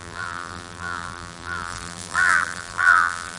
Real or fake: fake